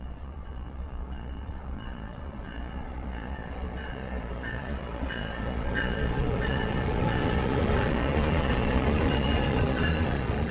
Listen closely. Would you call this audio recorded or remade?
remade